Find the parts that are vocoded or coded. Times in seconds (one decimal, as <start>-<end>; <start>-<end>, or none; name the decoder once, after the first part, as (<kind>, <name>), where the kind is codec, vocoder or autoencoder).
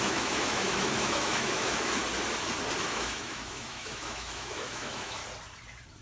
0.0-2.0 (autoencoder, DAC-VAE); 2.9-5.2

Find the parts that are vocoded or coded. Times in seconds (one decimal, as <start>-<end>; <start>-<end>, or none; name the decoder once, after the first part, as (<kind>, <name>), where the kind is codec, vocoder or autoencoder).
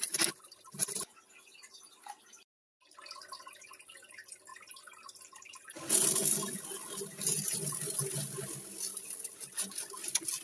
none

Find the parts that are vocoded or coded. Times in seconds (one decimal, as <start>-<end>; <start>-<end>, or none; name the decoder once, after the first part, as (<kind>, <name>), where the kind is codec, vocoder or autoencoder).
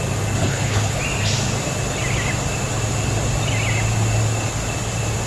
0.4-1.0 (codec, HILCodec)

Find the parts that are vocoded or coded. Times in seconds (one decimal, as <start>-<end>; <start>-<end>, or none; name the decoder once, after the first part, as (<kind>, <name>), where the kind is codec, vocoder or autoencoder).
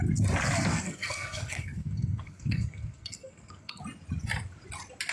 0.7-3.8 (codec, SNAC)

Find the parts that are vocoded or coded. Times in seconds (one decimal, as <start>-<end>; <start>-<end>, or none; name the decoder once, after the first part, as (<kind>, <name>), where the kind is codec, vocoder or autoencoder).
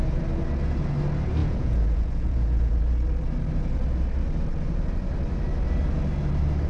1.4-2.8 (vocoder, Vocos)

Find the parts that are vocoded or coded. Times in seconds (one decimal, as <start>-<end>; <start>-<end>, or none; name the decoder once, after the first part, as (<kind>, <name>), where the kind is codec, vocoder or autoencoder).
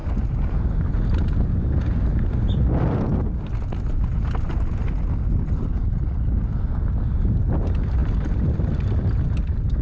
8.0-9.1 (vocoder, BigVGAN v2)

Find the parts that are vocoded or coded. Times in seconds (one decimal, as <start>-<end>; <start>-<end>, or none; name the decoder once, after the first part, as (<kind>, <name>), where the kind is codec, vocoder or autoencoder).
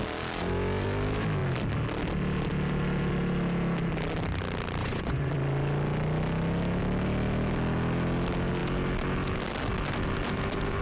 4.8-5.3 (vocoder, Vocos)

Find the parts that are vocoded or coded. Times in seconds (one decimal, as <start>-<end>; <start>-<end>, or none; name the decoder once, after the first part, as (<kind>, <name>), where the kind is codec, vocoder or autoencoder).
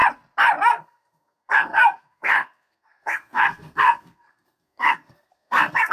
0.7-5.9 (codec, SNAC)